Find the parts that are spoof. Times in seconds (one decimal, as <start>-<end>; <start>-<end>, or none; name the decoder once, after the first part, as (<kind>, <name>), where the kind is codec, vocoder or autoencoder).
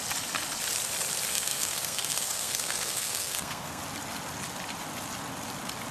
1.3-3.8 (codec, SNAC)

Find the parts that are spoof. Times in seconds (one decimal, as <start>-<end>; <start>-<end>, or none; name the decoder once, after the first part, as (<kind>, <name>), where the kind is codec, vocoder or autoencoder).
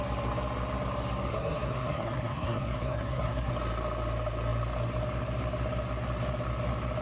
1.3-3.5 (codec, SNAC)